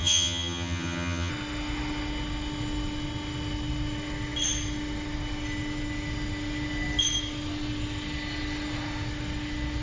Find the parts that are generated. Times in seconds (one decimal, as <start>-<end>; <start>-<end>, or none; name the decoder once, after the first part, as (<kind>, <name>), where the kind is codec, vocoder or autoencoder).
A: 0.0-1.3 (vocoder, HiFi-GAN)